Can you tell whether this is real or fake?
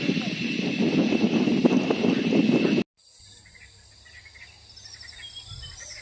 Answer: real